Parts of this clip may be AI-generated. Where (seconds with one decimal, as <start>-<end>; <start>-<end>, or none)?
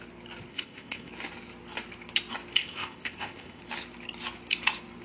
0.5-1.1; 2.6-3.6